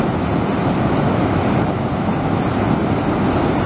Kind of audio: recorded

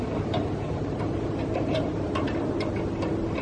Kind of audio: recorded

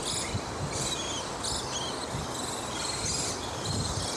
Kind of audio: recorded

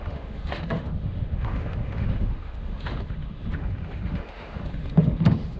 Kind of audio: remade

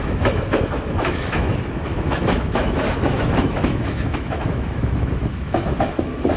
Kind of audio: remade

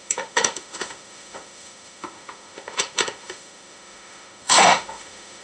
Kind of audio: remade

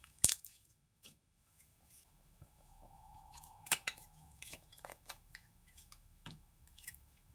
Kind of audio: remade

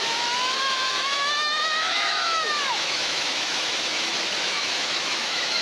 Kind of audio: remade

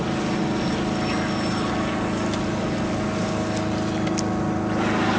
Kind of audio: recorded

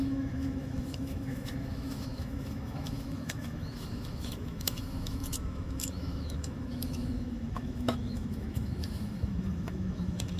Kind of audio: remade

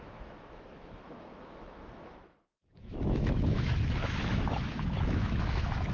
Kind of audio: remade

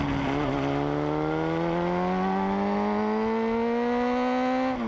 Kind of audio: recorded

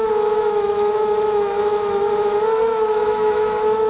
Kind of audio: remade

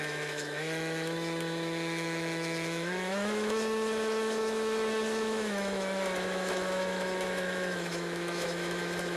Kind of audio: remade